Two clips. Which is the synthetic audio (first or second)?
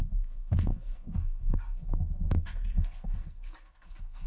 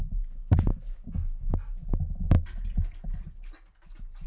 first